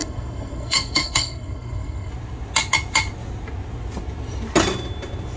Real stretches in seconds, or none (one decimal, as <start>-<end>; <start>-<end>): 2.1-5.4